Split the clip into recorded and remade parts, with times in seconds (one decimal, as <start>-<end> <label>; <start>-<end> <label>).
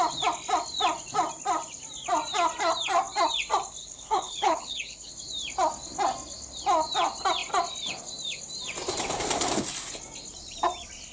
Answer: 0.0-3.8 recorded; 3.8-5.1 remade; 5.1-11.1 recorded